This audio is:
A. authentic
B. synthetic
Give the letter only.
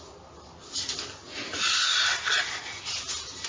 A